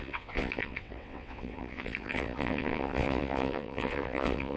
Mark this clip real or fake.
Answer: fake